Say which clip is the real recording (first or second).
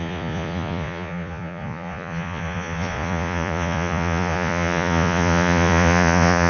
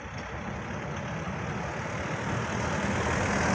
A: second